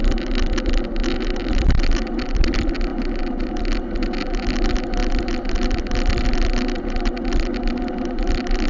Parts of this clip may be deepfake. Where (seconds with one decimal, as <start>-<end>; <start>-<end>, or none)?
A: none